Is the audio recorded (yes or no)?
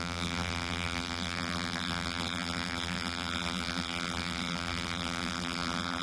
no